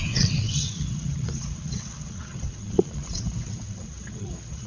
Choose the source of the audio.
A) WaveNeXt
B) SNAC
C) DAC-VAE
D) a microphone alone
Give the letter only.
A